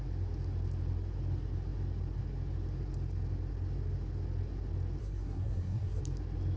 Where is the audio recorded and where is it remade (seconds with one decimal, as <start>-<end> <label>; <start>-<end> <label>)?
0.0-5.0 recorded; 5.0-6.0 remade; 6.0-6.6 recorded